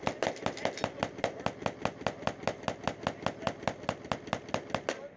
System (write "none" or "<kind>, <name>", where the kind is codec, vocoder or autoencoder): none